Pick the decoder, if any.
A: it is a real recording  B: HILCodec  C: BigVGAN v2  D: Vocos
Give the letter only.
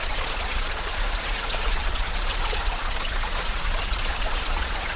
D